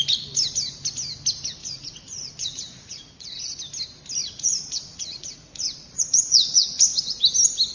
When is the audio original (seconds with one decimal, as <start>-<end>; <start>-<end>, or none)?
0.0-1.6; 3.6-4.2; 7.2-7.7